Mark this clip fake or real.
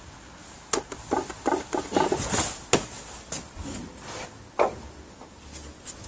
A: real